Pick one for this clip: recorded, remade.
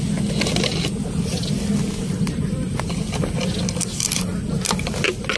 recorded